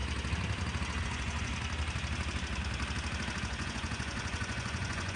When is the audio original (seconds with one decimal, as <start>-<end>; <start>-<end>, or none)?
0.0-1.0; 1.5-3.4